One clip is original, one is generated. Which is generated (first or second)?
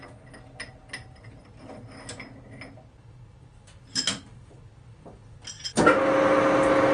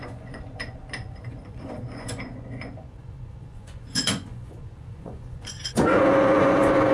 second